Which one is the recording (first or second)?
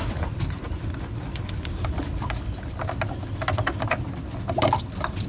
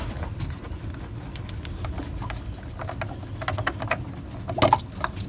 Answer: second